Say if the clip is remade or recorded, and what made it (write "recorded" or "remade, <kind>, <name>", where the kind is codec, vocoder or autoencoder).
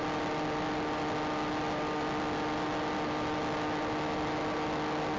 recorded